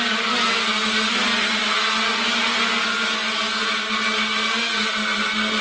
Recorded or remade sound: recorded